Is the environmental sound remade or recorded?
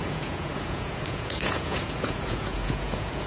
remade